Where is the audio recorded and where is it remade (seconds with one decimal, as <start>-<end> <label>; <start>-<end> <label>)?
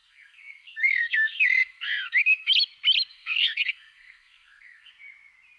0.0-2.5 remade; 2.5-3.1 recorded; 3.1-4.9 remade; 4.9-5.6 recorded